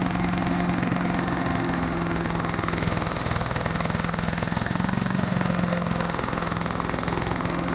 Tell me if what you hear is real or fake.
fake